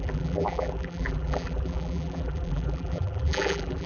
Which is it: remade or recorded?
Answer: remade